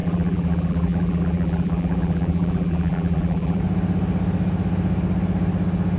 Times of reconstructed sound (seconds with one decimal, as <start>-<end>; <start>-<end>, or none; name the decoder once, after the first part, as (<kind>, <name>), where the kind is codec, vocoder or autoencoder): 0.0-3.6 (vocoder, BigVGAN v2)